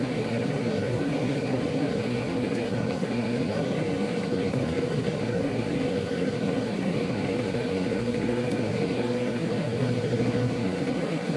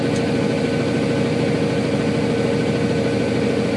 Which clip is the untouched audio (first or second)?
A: second